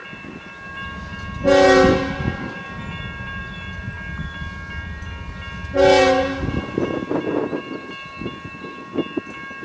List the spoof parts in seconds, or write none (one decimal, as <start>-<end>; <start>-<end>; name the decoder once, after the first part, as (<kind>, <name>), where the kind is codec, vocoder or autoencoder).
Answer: none